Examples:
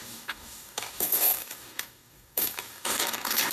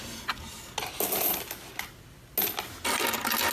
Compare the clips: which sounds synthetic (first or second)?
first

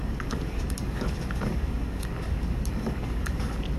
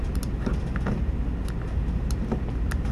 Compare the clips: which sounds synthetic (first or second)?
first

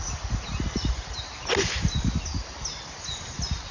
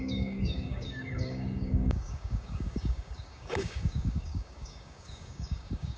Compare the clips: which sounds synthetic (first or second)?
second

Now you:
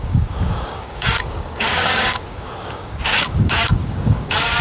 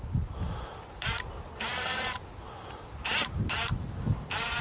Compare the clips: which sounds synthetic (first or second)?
first